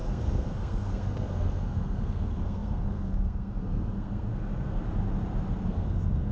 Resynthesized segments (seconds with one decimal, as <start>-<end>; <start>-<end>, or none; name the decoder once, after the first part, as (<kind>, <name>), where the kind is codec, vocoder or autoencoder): 0.0-4.8 (codec, SNAC); 5.7-6.3